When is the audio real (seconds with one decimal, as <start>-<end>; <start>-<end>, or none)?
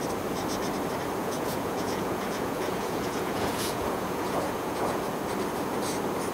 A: 0.0-1.2; 5.0-6.3